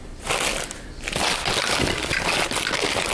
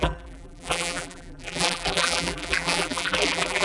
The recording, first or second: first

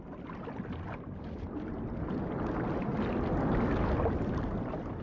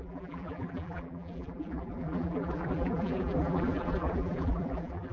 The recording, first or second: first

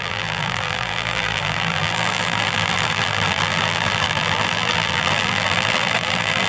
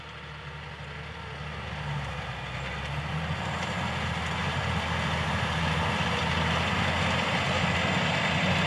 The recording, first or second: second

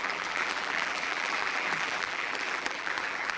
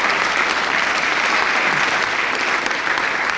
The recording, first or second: second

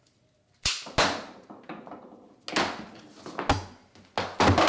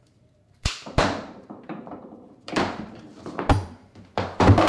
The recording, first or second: first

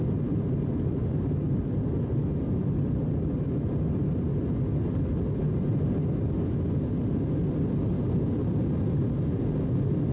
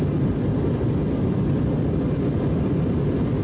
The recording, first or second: first